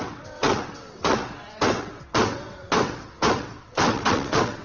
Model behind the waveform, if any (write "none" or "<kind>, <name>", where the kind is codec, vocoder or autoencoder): vocoder, WaveNeXt